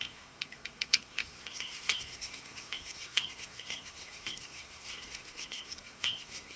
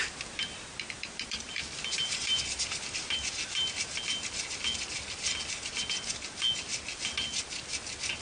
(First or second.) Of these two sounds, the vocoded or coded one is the first